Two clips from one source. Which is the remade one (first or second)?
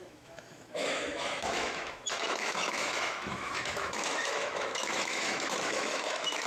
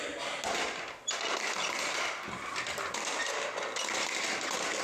first